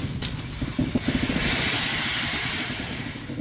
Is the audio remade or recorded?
recorded